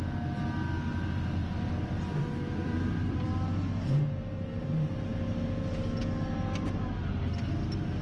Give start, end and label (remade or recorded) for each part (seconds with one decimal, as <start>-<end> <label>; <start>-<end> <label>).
0.0-1.4 recorded; 1.4-3.6 remade; 3.6-8.0 recorded